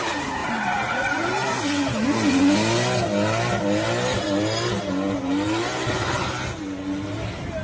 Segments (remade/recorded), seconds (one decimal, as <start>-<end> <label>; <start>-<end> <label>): 0.0-0.4 recorded; 0.4-1.6 remade; 1.6-7.6 recorded